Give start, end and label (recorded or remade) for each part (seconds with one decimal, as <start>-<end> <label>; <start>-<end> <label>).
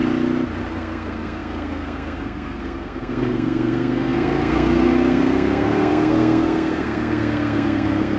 0.0-0.7 recorded; 0.7-8.2 remade